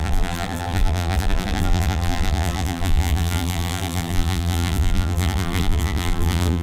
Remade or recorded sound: remade